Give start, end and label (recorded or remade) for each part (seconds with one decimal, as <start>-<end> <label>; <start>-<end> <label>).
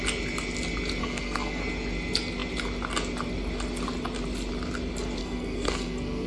0.0-1.0 recorded; 1.0-1.6 remade; 1.6-5.2 recorded; 5.2-6.3 remade